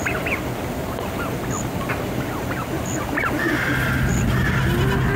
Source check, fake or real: real